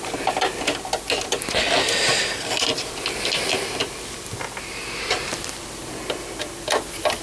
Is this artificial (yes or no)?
no